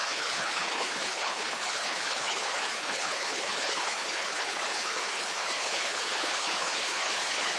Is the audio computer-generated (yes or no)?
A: yes